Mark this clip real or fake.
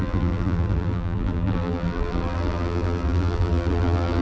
fake